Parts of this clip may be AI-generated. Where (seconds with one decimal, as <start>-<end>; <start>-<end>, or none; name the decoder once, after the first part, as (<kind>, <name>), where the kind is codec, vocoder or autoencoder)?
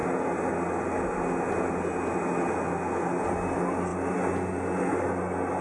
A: none